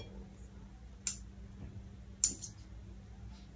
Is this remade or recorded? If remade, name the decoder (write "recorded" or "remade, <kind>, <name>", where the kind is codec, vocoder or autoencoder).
recorded